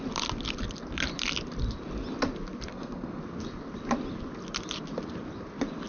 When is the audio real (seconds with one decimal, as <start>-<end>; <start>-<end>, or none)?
0.0-2.7; 3.2-5.9